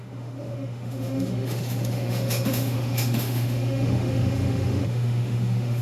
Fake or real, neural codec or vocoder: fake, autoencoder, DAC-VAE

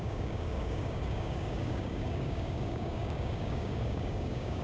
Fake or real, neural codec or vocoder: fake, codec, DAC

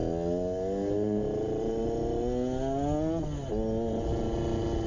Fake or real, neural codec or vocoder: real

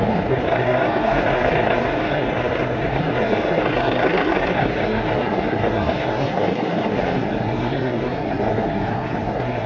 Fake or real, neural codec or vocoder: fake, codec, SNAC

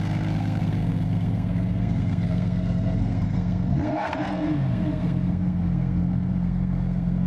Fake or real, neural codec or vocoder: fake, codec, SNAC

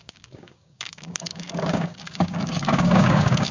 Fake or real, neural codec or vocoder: fake, codec, DAC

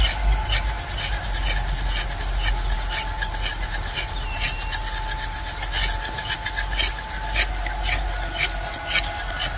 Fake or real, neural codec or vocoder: real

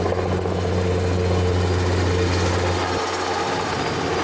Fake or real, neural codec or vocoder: real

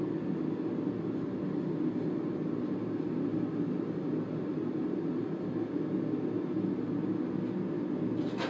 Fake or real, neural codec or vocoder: real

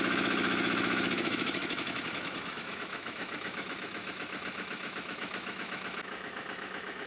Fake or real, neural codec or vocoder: fake, autoencoder, DAC-VAE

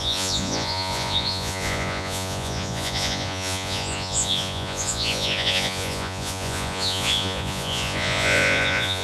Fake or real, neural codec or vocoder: fake, vocoder, Vocos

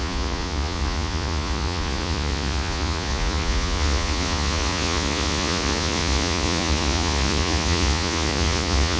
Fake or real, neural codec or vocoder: fake, vocoder, Vocos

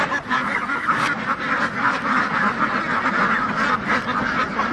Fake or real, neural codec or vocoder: real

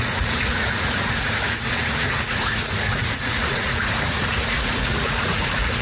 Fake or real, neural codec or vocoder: fake, vocoder, Vocos